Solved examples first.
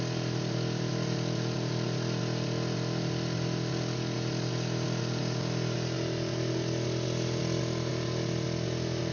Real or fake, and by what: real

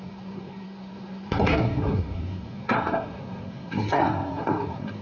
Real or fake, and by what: fake, codec, SNAC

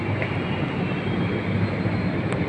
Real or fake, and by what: real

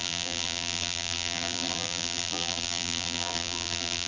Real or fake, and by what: fake, vocoder, BigVGAN v2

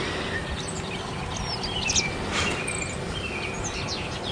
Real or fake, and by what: real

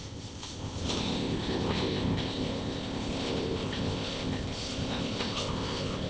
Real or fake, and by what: fake, codec, ZipCodec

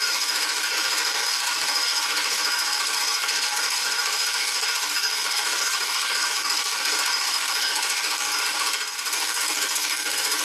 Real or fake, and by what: fake, codec, DAC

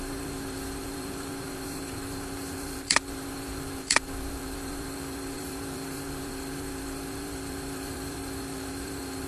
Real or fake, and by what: fake, vocoder, BigVGAN v2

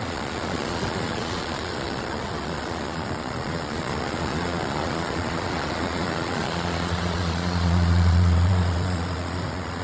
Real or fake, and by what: fake, vocoder, Vocos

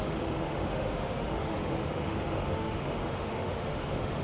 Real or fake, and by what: fake, autoencoder, DAC-VAE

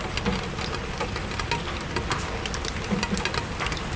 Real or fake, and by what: real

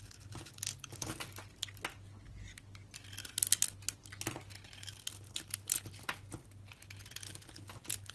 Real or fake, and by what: real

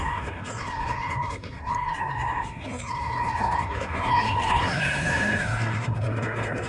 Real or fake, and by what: fake, codec, SNAC